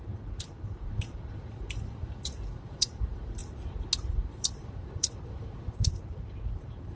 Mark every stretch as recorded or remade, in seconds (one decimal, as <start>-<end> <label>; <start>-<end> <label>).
0.0-3.4 remade; 3.4-4.1 recorded; 4.1-7.0 remade